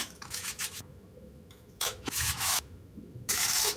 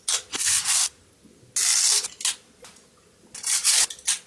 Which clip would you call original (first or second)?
second